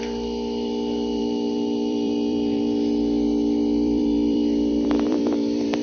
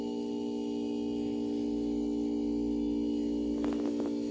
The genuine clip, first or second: second